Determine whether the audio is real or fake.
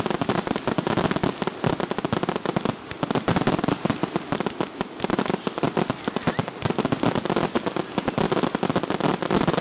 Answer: real